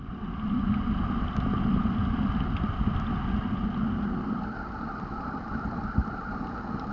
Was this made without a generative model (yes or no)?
yes